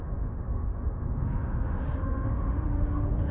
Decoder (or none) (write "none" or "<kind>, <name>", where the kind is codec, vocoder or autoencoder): autoencoder, DAC-VAE